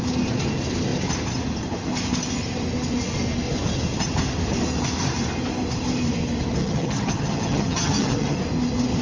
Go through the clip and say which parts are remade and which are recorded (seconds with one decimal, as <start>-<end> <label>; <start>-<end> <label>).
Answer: 0.0-6.6 recorded; 6.6-8.4 remade; 8.4-9.0 recorded